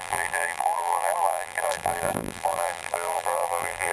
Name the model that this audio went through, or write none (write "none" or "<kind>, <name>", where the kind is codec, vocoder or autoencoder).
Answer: vocoder, BigVGAN v2